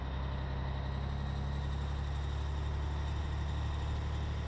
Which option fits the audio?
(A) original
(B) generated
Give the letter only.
A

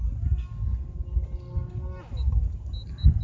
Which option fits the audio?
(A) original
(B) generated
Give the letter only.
A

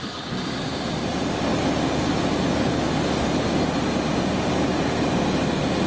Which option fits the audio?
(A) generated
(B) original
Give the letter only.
B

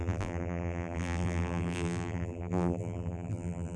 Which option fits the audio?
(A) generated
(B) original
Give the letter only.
A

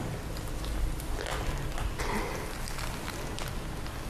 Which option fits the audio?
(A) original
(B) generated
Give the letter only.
A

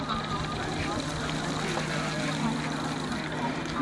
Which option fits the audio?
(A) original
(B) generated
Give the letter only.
A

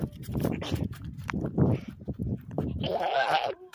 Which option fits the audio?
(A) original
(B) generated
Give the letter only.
B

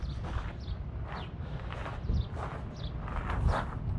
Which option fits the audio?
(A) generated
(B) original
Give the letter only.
A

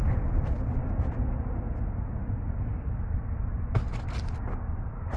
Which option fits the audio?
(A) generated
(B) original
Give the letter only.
A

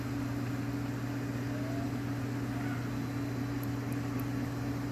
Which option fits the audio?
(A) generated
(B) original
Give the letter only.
B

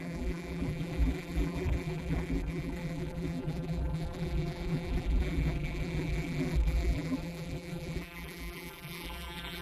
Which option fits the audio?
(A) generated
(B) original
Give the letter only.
A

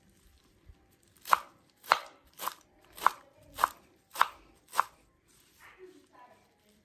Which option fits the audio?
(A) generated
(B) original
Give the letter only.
A